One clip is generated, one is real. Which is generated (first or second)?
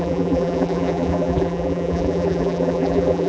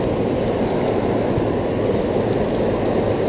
first